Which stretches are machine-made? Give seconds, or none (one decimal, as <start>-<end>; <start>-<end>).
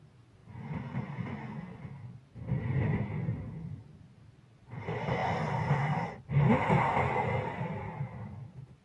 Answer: 0.4-1.8